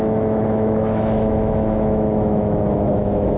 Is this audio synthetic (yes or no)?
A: yes